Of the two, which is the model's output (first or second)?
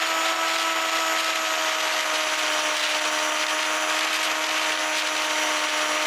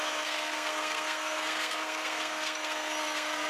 second